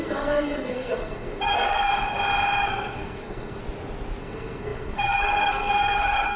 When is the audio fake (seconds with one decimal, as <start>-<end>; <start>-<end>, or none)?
0.0-1.9; 2.6-3.6; 4.2-6.4